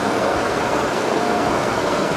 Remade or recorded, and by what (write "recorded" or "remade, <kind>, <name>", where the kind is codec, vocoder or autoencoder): remade, codec, SNAC